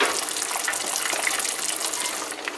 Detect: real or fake real